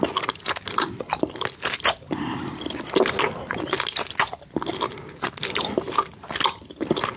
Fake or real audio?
real